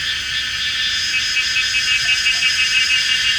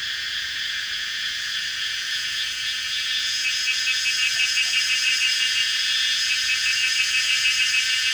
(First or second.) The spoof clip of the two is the second